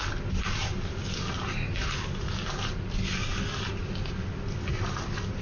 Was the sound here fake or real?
real